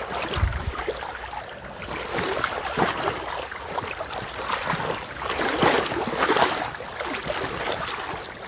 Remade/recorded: recorded